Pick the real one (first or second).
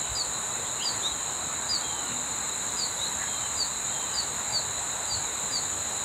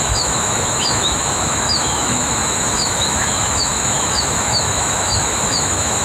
first